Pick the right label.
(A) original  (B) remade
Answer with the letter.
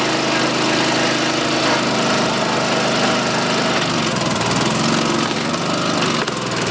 A